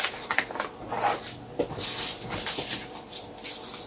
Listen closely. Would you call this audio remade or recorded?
recorded